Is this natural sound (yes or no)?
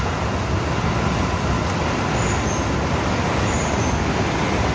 yes